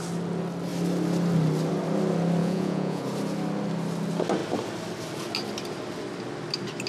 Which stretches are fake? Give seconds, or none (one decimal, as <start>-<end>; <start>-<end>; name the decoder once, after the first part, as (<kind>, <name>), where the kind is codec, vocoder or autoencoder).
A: 2.4-3.0 (vocoder, Vocos)